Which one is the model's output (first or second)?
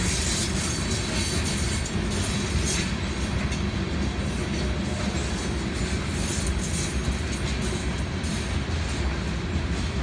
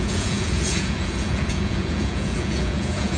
second